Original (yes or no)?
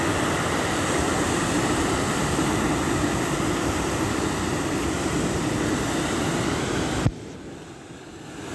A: yes